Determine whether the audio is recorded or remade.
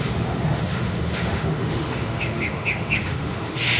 remade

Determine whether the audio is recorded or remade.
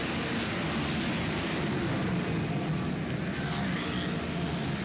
recorded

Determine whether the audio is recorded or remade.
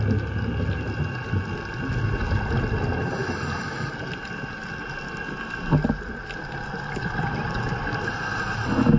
recorded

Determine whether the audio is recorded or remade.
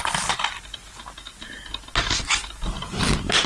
recorded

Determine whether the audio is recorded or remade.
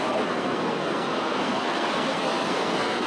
remade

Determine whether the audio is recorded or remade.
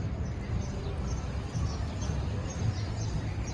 recorded